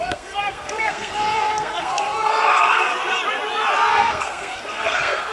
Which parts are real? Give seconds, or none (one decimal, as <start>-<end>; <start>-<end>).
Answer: 2.9-3.9